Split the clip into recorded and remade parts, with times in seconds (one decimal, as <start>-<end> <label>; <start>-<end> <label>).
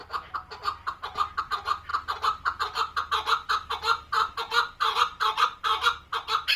0.0-6.6 recorded